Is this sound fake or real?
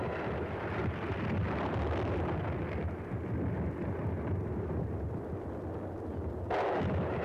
real